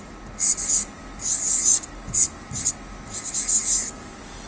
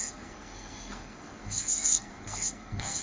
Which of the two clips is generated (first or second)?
second